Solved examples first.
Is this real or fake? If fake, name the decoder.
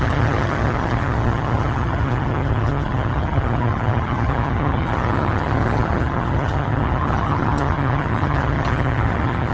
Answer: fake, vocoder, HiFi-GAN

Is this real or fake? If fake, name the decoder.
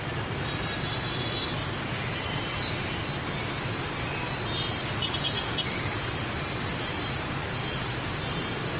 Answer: real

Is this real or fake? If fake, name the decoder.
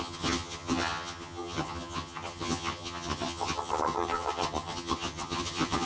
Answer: fake, vocoder, HiFi-GAN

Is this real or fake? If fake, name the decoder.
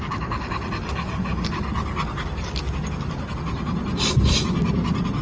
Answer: real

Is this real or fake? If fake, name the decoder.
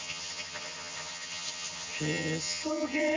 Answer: fake, vocoder, HiFi-GAN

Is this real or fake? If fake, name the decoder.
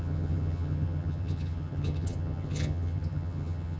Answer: fake, vocoder, HiFi-GAN